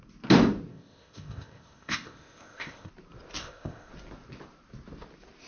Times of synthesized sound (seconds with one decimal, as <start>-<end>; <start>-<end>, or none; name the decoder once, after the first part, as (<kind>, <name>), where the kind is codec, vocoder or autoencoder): 0.7-2.9 (codec, ZipCodec); 3.4-3.9